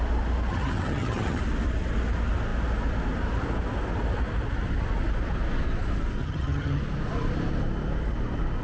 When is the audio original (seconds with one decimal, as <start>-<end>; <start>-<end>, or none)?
0.0-0.5; 1.4-6.2; 6.8-8.6